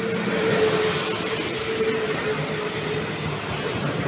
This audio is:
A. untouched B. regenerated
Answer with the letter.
A